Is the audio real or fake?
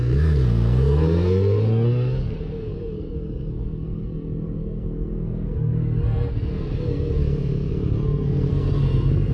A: fake